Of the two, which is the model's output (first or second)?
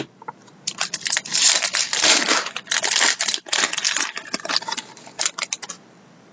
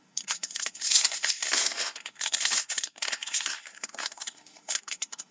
second